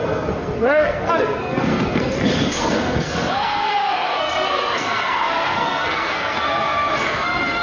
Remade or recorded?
remade